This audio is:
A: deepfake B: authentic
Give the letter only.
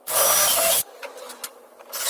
B